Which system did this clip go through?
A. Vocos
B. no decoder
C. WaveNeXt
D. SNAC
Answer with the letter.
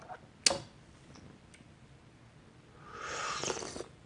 B